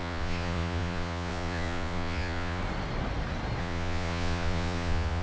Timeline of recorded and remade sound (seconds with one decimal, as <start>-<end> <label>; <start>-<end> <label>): 0.0-2.6 remade; 2.6-3.6 recorded; 3.6-5.2 remade

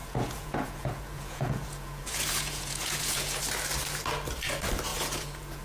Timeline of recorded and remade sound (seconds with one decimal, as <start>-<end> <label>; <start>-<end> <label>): 0.0-3.4 remade; 3.4-4.9 recorded; 4.9-5.6 remade

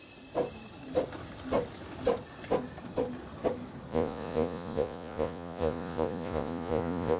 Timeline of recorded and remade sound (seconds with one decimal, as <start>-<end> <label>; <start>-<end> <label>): 0.0-3.9 recorded; 3.9-7.2 remade

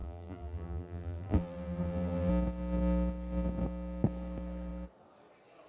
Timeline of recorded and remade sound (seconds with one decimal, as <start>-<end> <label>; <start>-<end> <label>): 0.0-2.3 remade; 2.3-5.7 recorded

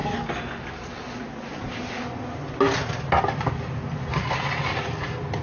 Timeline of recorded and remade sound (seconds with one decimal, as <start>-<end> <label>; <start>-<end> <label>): 0.0-5.4 recorded